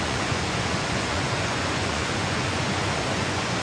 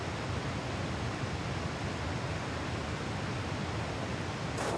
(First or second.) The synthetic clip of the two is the first